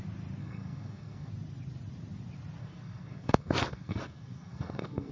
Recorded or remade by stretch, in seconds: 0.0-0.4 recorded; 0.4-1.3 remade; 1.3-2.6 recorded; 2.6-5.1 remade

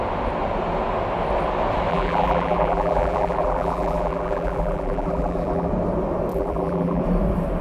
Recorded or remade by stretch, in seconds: 0.0-1.9 recorded; 1.9-5.7 remade; 5.7-6.3 recorded; 6.3-7.0 remade; 7.0-7.6 recorded

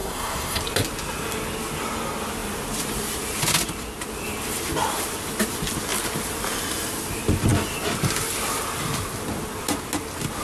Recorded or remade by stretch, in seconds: 0.0-0.6 remade; 0.6-10.4 recorded

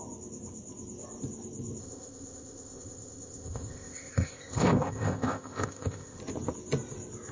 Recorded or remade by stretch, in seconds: 0.0-1.8 recorded; 1.8-6.2 remade; 6.2-7.3 recorded

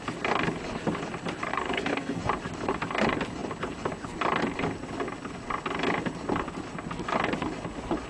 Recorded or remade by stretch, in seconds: 0.0-1.5 recorded; 1.5-2.2 remade; 2.2-8.1 recorded

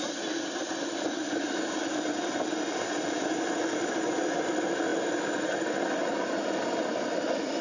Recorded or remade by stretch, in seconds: 0.0-7.6 recorded

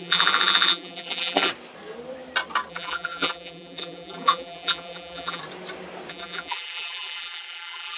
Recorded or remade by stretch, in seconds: 0.0-1.5 remade; 1.5-2.7 recorded; 2.7-5.4 remade; 5.4-6.1 recorded; 6.1-8.0 remade